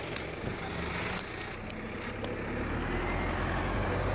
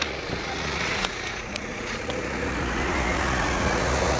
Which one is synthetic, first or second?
second